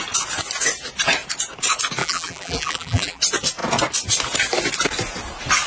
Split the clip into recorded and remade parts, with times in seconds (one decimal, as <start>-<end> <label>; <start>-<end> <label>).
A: 0.0-2.0 recorded; 2.0-3.2 remade; 3.2-5.7 recorded

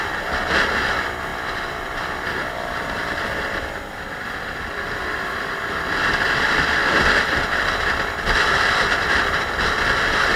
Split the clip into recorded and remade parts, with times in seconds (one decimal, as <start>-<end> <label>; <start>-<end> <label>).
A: 0.0-1.3 recorded; 1.3-5.6 remade; 5.6-10.4 recorded

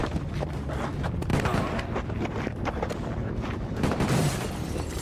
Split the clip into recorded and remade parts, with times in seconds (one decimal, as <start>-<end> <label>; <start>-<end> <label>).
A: 0.0-5.0 remade

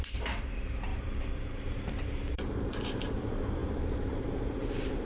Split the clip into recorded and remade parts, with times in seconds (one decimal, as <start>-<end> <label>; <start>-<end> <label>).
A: 0.0-5.0 remade

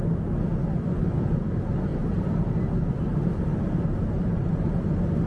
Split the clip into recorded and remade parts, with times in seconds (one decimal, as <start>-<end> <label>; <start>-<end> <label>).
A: 0.0-1.9 recorded; 1.9-4.8 remade; 4.8-5.3 recorded

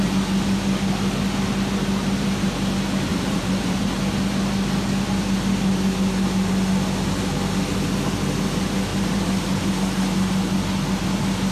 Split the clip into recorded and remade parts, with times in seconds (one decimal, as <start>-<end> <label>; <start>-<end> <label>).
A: 0.0-3.1 recorded; 3.1-3.9 remade; 3.9-8.9 recorded; 8.9-9.7 remade; 9.7-11.5 recorded

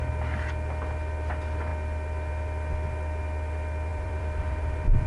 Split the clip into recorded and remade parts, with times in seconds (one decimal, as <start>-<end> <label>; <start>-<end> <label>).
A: 0.0-3.9 recorded; 3.9-5.1 remade